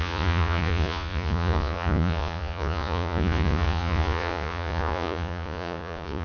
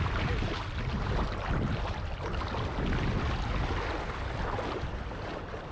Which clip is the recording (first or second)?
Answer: second